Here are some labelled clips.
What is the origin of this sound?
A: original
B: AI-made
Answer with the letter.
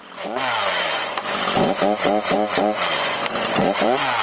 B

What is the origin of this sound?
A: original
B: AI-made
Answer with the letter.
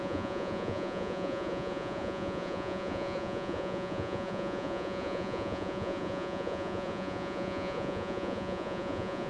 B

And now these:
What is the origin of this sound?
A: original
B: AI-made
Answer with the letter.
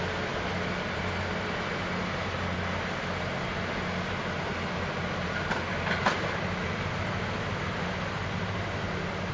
A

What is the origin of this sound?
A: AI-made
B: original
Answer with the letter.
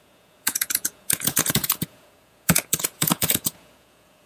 A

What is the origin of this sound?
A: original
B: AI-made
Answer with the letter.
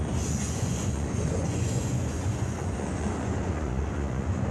B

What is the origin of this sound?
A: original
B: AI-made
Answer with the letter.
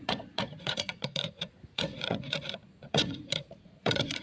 B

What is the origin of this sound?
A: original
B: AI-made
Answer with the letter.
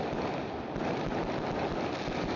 A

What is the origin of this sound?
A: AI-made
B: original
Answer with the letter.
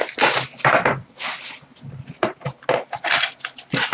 B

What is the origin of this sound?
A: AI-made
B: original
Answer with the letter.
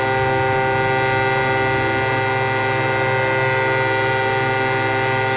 B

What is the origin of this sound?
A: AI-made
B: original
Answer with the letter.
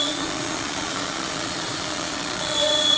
A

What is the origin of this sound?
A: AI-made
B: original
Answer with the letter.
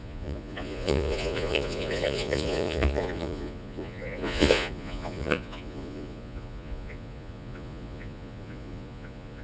A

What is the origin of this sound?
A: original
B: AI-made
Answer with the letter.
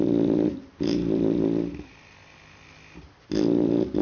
A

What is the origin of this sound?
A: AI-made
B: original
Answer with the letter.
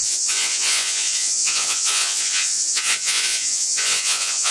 A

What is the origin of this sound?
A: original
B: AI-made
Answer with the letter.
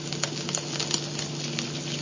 A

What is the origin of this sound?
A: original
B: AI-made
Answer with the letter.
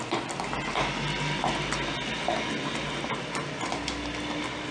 A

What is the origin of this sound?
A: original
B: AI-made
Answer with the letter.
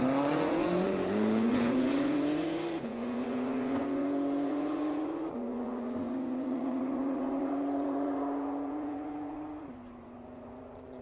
B